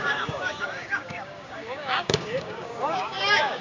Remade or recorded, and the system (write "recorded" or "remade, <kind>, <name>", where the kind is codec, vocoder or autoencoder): remade, codec, DAC